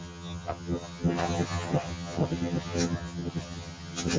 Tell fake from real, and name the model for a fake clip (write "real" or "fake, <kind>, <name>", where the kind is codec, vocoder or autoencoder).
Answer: fake, vocoder, HiFi-GAN